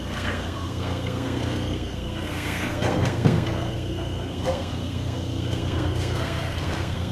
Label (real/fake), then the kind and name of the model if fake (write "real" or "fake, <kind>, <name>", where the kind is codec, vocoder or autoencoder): fake, codec, SNAC